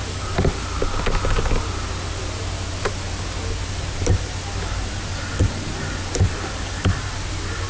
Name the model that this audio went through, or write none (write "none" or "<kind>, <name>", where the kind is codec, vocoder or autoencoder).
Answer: none